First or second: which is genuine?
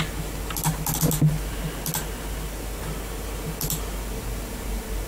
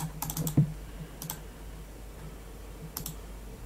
first